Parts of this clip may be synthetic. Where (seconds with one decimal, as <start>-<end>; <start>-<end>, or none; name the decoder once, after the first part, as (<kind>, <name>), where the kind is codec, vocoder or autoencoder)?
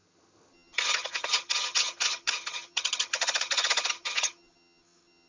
0.0-5.3 (vocoder, HiFi-GAN)